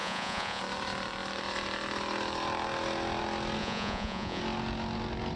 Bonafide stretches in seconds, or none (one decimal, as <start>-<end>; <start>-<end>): 0.6-3.6; 4.4-5.4